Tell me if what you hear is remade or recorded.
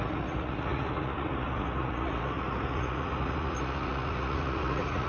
remade